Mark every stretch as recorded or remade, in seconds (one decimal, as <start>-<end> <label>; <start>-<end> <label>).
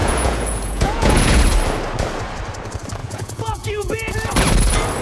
0.0-1.4 remade; 1.4-3.0 recorded; 3.0-4.1 remade; 4.1-5.0 recorded